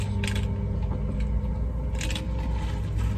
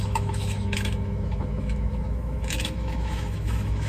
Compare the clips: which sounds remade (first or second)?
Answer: second